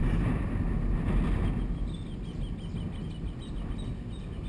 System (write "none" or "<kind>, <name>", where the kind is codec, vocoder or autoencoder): none